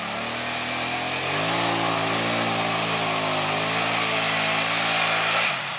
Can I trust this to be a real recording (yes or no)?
yes